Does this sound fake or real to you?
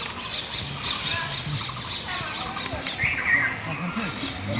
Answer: real